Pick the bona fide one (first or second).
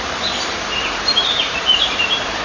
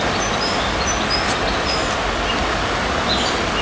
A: second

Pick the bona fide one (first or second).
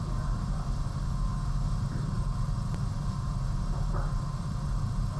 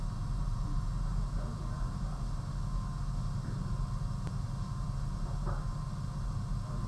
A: second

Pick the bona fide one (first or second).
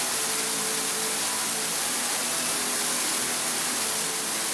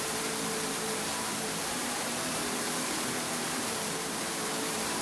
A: first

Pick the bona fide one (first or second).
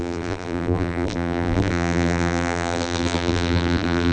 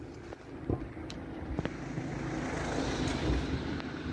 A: second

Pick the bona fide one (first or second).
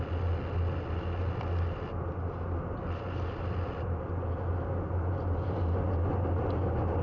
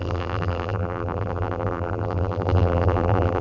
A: first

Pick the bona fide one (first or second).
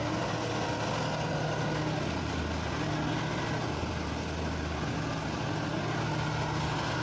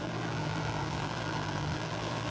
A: first